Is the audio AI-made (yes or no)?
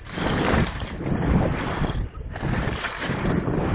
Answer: no